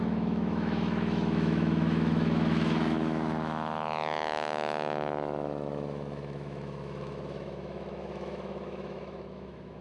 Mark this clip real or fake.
fake